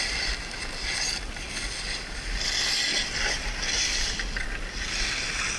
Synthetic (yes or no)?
no